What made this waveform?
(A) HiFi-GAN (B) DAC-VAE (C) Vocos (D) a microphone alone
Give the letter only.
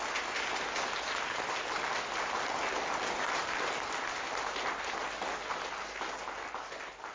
D